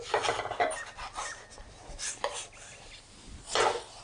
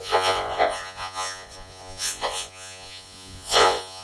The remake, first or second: second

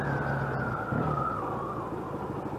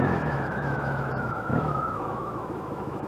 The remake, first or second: second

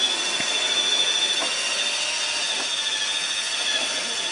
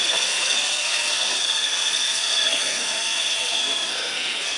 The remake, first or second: second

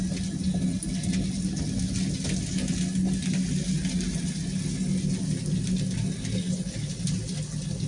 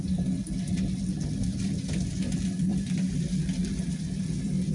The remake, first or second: second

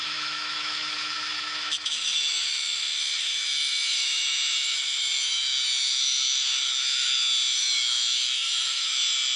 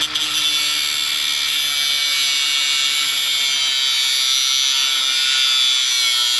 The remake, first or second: first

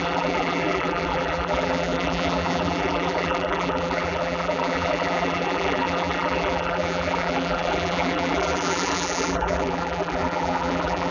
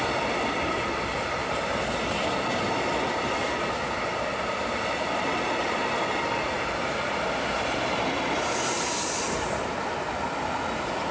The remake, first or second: first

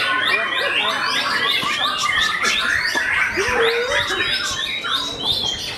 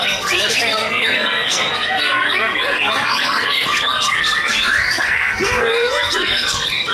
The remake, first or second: second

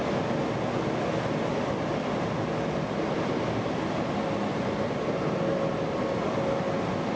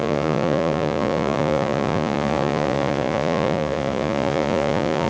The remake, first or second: second